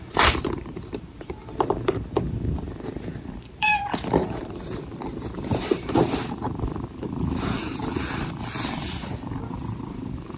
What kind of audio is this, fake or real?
fake